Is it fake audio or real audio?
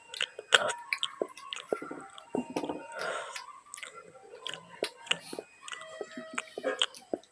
real